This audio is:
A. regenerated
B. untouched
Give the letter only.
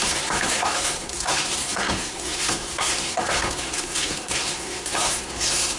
A